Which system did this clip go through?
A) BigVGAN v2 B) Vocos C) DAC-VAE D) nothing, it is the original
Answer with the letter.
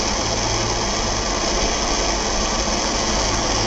D